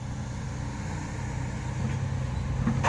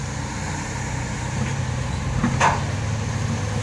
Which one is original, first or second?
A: first